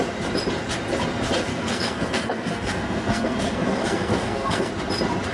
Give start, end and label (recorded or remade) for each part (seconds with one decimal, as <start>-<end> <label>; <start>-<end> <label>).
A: 0.0-1.5 recorded; 1.5-4.7 remade; 4.7-5.3 recorded